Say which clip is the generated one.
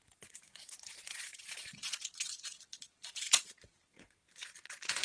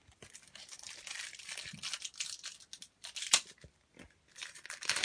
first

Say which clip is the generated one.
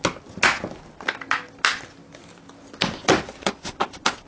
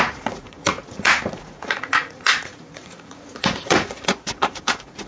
second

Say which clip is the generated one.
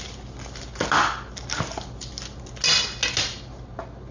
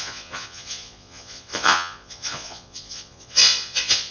second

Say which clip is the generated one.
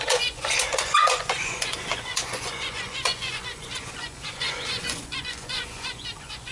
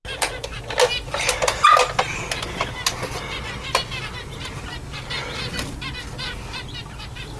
first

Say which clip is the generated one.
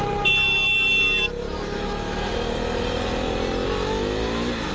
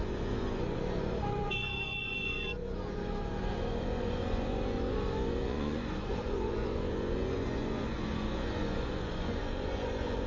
second